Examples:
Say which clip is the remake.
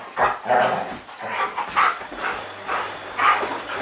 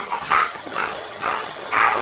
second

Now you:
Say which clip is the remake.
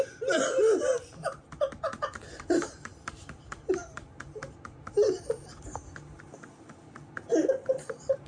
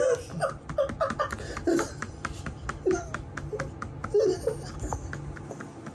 first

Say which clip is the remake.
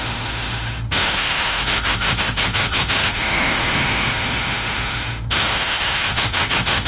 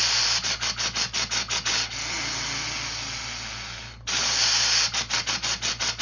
first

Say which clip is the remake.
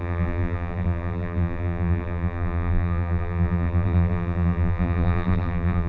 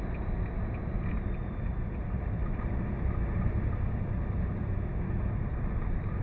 first